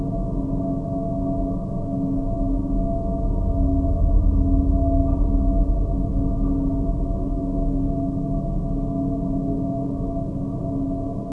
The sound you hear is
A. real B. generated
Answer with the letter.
A